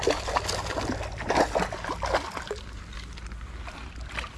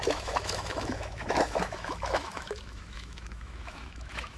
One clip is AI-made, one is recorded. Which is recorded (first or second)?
first